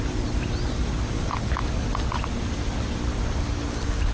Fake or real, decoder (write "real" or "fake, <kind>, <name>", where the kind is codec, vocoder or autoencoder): real